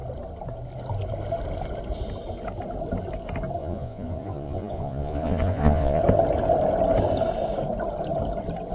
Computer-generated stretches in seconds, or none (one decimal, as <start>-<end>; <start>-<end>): 3.6-6.0